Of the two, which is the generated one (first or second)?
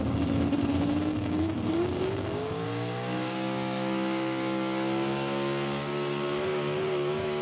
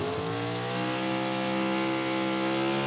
first